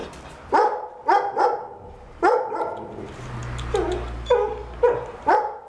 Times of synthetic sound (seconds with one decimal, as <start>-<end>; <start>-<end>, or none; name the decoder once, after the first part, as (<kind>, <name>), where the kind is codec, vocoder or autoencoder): 0.0-1.0 (vocoder, BigVGAN v2); 1.5-3.4; 4.6-5.7